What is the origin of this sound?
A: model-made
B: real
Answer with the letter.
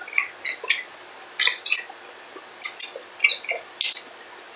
B